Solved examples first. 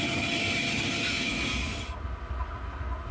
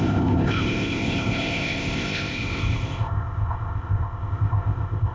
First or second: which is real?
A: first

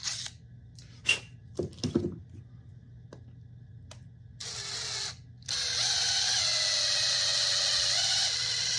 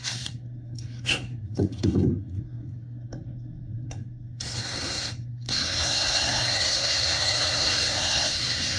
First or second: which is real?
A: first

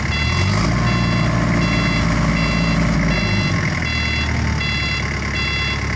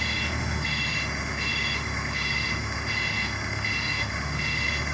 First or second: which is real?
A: first